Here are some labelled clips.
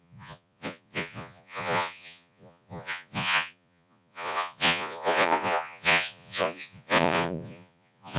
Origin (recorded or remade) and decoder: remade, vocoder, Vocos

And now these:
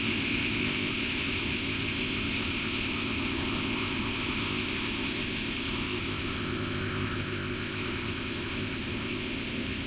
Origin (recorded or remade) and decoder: remade, codec, ZipCodec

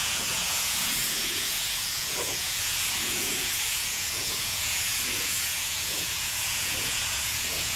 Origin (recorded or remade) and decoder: remade, vocoder, Vocos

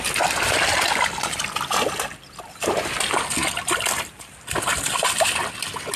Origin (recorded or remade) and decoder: recorded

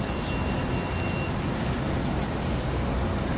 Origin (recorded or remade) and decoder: recorded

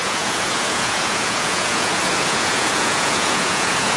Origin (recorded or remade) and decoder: remade, vocoder, Vocos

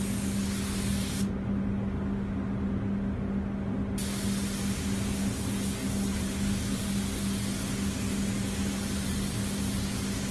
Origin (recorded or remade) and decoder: recorded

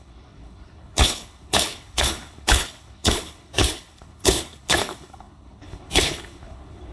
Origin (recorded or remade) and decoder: remade, codec, HILCodec